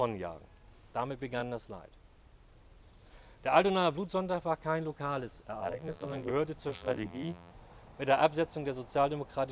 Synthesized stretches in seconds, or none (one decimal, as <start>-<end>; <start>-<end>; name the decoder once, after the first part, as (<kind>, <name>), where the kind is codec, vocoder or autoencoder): 5.6-6.3 (vocoder, BigVGAN v2); 6.7-7.5